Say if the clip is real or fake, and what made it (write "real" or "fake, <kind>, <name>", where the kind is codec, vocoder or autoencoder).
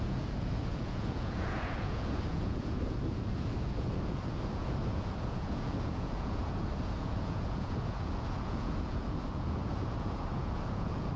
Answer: fake, vocoder, Vocos